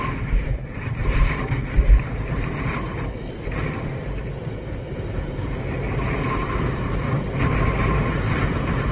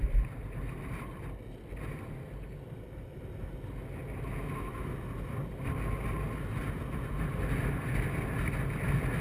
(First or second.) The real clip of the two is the second